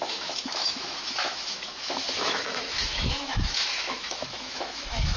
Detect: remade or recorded remade